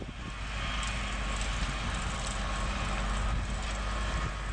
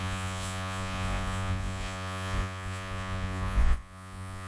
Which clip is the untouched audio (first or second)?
first